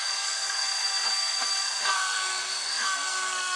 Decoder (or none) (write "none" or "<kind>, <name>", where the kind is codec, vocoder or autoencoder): codec, SNAC